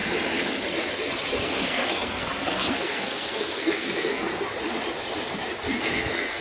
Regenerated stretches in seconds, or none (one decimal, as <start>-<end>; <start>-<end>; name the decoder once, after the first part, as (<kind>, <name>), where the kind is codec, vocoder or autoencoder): 1.4-4.3 (codec, SNAC); 5.8-6.4